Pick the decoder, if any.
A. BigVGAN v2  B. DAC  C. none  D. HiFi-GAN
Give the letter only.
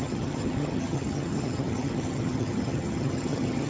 D